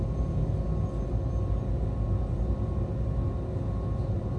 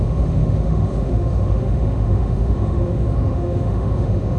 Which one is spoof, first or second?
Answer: second